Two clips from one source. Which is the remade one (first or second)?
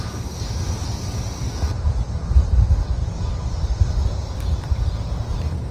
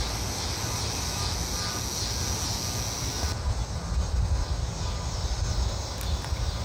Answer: first